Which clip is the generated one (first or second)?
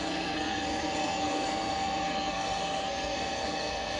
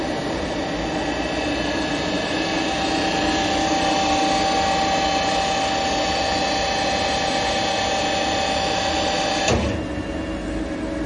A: first